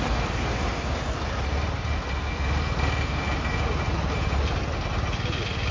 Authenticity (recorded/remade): recorded